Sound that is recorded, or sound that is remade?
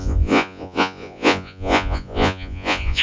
remade